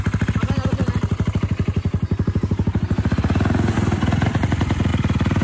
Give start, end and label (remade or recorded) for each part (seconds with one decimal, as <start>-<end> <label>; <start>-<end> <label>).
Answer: 0.0-5.4 recorded

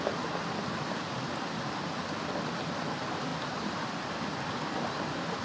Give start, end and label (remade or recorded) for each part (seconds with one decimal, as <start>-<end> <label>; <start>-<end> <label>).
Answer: 0.0-3.3 recorded; 3.3-4.6 remade; 4.6-5.4 recorded

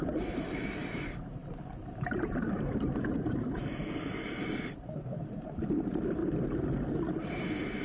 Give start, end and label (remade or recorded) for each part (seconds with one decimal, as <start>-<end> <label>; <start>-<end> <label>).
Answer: 0.0-6.2 remade; 6.2-7.1 recorded; 7.1-7.8 remade

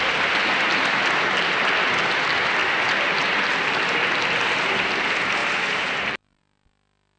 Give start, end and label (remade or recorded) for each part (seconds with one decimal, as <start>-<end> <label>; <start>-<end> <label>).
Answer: 0.0-5.4 recorded; 5.4-6.4 remade; 6.4-7.2 recorded

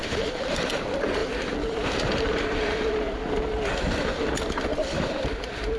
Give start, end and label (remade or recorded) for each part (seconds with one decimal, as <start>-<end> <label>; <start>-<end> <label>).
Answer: 0.0-0.7 remade; 0.7-5.8 recorded

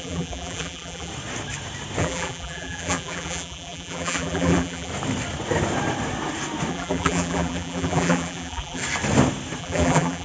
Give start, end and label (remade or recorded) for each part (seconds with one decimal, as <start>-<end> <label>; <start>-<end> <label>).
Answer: 0.0-1.1 remade; 1.1-2.0 recorded; 2.0-4.9 remade; 4.9-6.7 recorded; 6.7-8.8 remade; 8.8-9.6 recorded; 9.6-10.2 remade

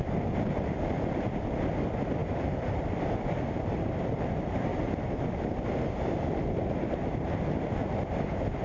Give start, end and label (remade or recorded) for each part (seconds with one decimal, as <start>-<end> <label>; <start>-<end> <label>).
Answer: 0.0-4.7 remade; 4.7-7.6 recorded; 7.6-8.6 remade

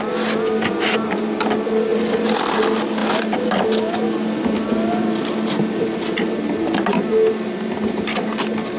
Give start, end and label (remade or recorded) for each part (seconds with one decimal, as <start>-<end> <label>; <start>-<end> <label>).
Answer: 0.0-8.8 recorded